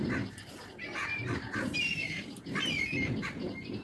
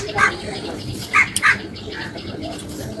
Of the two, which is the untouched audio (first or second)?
second